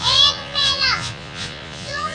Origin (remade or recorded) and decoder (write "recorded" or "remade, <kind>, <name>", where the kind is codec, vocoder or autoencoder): remade, vocoder, Vocos